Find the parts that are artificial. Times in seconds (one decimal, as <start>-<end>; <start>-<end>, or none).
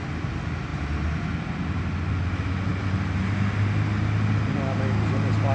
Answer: none